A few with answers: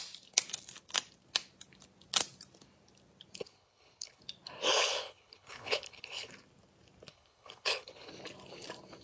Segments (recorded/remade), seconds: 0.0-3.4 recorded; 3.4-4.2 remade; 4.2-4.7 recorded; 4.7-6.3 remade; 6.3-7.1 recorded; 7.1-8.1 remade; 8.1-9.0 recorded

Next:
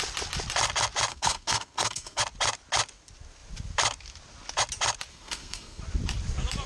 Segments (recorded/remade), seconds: 0.0-1.1 recorded; 1.1-2.2 remade; 2.2-5.1 recorded; 5.1-5.8 remade; 5.8-6.7 recorded

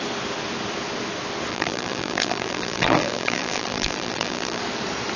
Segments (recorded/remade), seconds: 0.0-1.5 recorded; 1.5-4.6 remade; 4.6-5.2 recorded

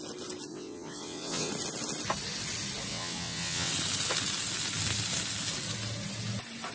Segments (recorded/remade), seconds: 0.0-0.5 recorded; 0.5-1.5 remade; 1.5-2.9 recorded; 2.9-3.7 remade; 3.7-6.7 recorded

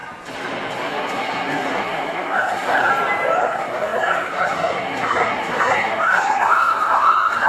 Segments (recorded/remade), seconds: 0.0-0.8 recorded; 0.8-2.9 remade; 2.9-3.4 recorded; 3.4-7.5 remade

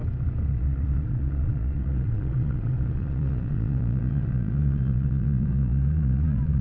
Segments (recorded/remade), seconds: 0.0-0.5 recorded; 0.5-6.6 remade

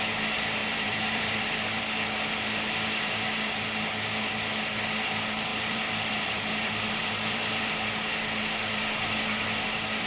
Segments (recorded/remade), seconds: 0.0-0.6 recorded; 0.6-1.8 remade; 1.8-5.5 recorded; 5.5-7.7 remade; 7.7-10.1 recorded

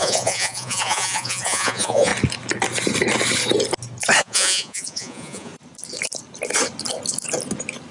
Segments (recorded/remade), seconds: 0.0-2.1 remade; 2.1-4.2 recorded; 4.2-5.5 remade; 5.5-7.9 recorded